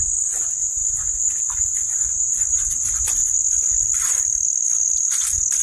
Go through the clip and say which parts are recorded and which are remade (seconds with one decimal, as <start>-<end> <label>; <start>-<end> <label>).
0.0-5.6 recorded

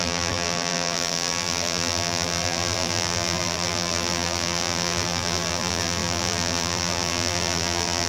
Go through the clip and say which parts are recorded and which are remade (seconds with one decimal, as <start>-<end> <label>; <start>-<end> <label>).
0.0-8.1 remade

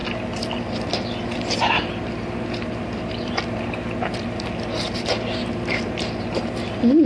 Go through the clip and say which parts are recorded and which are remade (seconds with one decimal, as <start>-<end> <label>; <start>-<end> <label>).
0.0-7.1 recorded

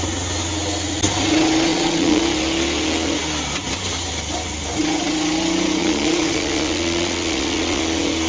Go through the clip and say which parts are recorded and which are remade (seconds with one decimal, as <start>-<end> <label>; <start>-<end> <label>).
0.0-1.7 recorded; 1.7-2.2 remade; 2.2-5.8 recorded; 5.8-7.8 remade; 7.8-8.3 recorded

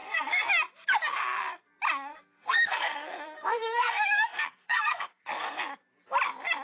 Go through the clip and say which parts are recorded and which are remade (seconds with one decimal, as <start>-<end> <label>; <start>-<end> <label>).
0.0-0.5 remade; 0.5-2.1 recorded; 2.1-5.6 remade; 5.6-6.6 recorded